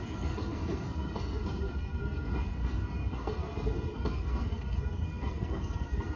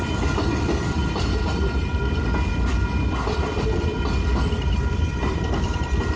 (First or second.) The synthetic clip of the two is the first